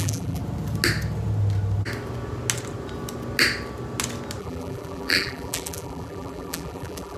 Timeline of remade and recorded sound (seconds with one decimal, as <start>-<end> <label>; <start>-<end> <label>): 0.0-0.4 remade; 0.4-4.4 recorded; 4.4-7.2 remade